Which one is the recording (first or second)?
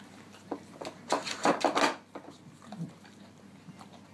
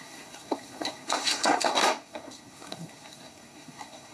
first